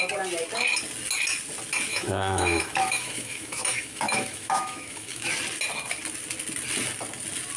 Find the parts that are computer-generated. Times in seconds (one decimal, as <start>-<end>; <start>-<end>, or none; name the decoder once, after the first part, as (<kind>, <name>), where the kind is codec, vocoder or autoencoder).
1.9-5.3 (autoencoder, DAC-VAE)